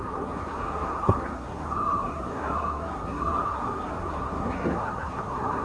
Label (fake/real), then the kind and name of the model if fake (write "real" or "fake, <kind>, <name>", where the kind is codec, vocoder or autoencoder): fake, codec, SNAC